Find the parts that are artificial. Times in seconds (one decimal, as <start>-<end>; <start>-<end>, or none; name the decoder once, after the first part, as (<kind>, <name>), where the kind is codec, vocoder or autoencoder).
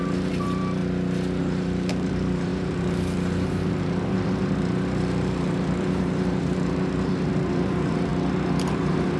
0.0-0.8 (vocoder, BigVGAN v2); 1.4-8.1; 8.7-9.2